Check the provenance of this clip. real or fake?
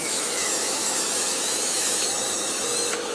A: fake